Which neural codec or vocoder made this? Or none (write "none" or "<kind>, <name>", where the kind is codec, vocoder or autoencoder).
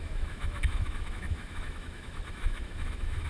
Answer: autoencoder, DAC-VAE